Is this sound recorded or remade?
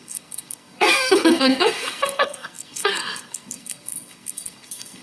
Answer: remade